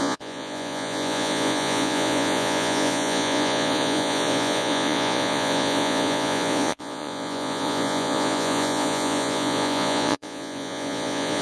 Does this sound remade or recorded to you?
remade